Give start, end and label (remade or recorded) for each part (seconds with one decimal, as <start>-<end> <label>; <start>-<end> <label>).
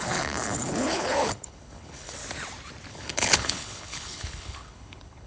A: 0.0-2.2 remade; 2.2-2.9 recorded; 2.9-5.3 remade